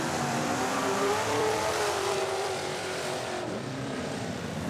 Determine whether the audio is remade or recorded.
remade